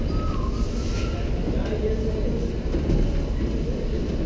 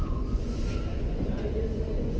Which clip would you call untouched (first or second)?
first